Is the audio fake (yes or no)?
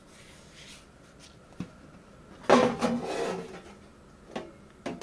no